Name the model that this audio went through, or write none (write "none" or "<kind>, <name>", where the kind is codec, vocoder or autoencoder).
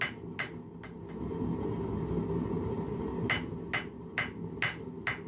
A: none